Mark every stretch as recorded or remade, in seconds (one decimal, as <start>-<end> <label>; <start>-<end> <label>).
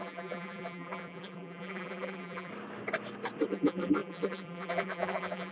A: 0.0-2.5 remade; 2.5-3.5 recorded; 3.5-5.5 remade